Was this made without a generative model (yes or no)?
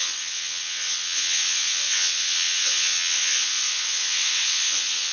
no